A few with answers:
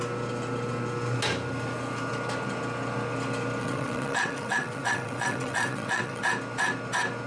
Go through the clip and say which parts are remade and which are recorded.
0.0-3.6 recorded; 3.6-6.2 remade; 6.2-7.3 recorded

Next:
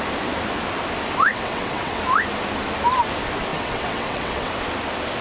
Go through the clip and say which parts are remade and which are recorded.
0.0-1.3 recorded; 1.3-2.0 remade; 2.0-3.5 recorded; 3.5-4.5 remade; 4.5-5.2 recorded

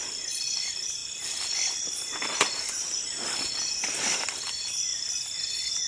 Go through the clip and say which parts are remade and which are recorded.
0.0-5.9 recorded

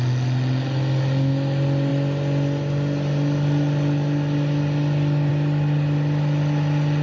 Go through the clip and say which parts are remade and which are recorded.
0.0-7.0 recorded

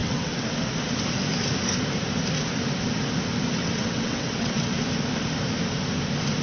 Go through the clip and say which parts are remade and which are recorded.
0.0-0.7 remade; 0.7-3.6 recorded; 3.6-4.8 remade; 4.8-6.4 recorded

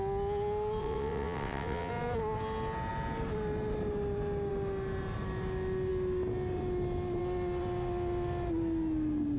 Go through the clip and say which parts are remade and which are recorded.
0.0-0.8 recorded; 0.8-1.9 remade; 1.9-9.4 recorded

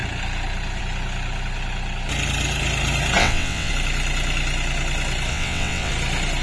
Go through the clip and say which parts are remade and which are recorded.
0.0-3.2 recorded; 3.2-3.7 remade; 3.7-5.3 recorded; 5.3-5.9 remade; 5.9-6.4 recorded

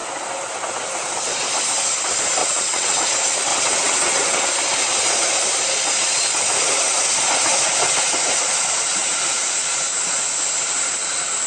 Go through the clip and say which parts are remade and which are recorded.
0.0-2.4 recorded; 2.4-3.0 remade; 3.0-3.5 recorded; 3.5-4.4 remade; 4.4-11.5 recorded